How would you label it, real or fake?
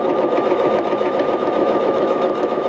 fake